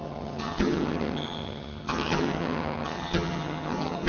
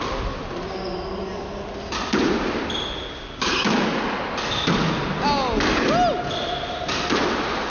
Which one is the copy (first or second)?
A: first